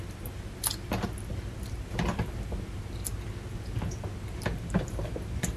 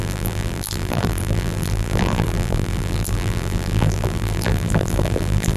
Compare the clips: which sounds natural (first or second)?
first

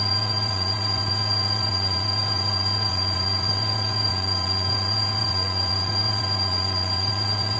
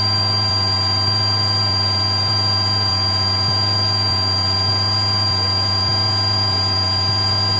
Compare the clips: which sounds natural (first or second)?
second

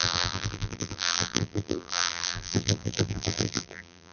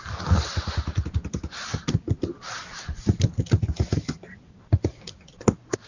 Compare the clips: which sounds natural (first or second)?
second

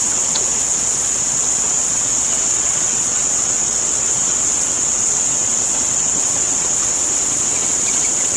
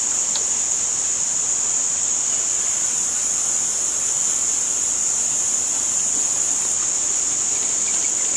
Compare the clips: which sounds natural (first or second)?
second